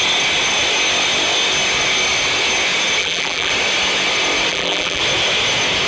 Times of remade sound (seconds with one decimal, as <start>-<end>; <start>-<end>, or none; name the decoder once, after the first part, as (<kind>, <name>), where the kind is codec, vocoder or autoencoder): 3.0-3.5 (vocoder, BigVGAN v2); 4.5-5.0